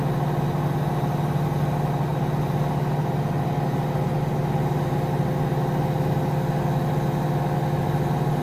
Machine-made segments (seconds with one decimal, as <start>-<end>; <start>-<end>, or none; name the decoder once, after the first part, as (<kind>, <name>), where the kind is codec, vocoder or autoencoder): none